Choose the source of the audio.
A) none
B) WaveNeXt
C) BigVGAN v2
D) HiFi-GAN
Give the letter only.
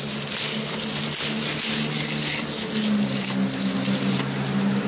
A